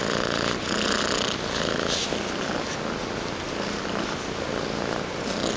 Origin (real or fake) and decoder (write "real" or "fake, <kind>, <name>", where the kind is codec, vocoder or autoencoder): real